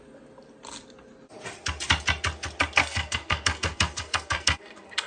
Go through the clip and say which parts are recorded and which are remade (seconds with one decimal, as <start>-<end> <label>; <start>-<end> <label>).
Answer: 0.0-2.8 recorded; 2.8-5.1 remade